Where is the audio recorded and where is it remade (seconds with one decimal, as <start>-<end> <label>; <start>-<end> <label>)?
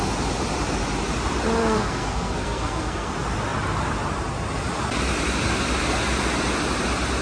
0.0-1.6 recorded; 1.6-3.1 remade; 3.1-7.2 recorded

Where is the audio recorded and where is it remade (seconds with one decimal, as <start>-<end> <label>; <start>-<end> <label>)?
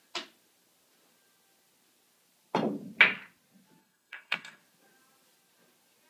0.0-3.8 recorded; 3.8-4.6 remade; 4.6-6.1 recorded